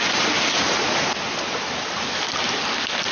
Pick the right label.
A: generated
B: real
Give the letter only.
B